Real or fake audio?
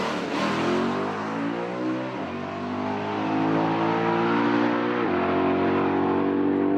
real